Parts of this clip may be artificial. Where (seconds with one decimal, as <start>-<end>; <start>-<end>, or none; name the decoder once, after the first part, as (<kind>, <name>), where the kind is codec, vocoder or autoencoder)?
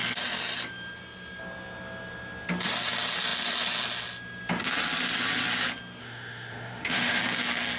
6.0-7.2 (autoencoder, DAC-VAE)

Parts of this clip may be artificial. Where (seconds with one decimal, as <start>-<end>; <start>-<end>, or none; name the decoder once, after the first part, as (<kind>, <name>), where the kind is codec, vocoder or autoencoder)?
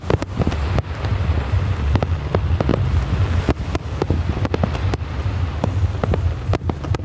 none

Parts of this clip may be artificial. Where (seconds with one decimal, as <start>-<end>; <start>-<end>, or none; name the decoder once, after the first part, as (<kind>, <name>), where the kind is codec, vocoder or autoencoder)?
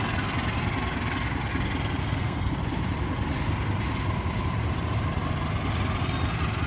2.0-2.5 (codec, SNAC)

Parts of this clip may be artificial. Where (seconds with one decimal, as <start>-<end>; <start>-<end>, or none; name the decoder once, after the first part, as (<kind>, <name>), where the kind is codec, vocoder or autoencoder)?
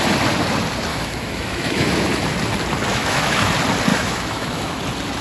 0.9-1.9 (autoencoder, DAC-VAE); 2.9-3.5; 3.9-4.8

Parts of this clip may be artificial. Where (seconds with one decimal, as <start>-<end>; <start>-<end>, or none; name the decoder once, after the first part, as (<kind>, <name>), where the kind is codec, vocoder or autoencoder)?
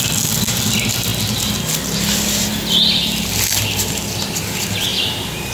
none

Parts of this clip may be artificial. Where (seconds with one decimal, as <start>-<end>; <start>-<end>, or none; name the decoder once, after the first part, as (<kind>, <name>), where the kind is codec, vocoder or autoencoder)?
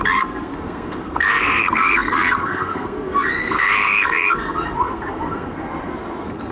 0.0-6.5 (codec, SNAC)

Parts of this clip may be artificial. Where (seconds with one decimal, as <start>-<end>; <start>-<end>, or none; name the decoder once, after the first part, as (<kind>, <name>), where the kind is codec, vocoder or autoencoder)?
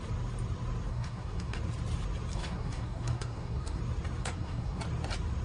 0.9-1.6 (codec, SNAC); 2.3-3.8; 4.2-4.8